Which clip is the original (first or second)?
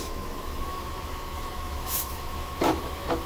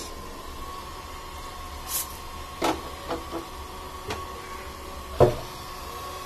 second